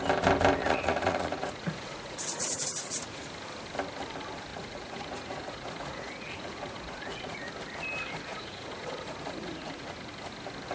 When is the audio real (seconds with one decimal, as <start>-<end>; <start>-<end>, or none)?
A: 0.0-0.6; 3.3-4.5; 7.5-8.3; 9.9-10.7

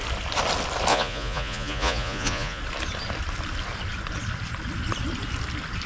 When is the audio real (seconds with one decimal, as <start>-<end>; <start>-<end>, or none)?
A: 0.0-0.9; 2.6-5.9

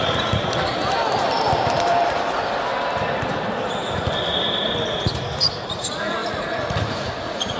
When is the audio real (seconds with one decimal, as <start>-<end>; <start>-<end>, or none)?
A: 0.8-5.4

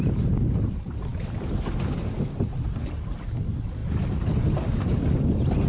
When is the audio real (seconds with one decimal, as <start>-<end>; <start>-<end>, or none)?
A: 0.0-5.7

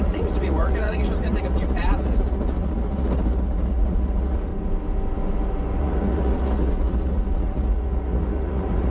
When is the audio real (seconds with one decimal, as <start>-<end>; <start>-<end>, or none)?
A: 4.5-5.8

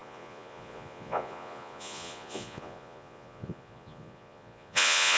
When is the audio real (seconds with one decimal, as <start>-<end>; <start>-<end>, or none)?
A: none